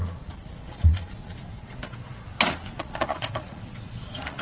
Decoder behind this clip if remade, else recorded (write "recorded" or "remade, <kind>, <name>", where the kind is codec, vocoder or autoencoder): remade, vocoder, Vocos